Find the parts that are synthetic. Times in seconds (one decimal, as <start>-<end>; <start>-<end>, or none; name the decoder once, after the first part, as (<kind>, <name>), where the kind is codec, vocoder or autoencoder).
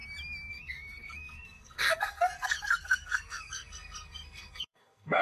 0.5-5.2 (codec, SNAC)